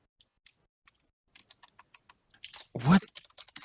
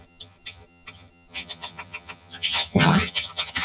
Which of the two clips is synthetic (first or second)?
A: second